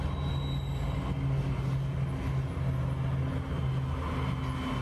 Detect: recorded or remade recorded